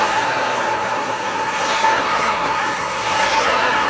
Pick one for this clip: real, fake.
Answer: fake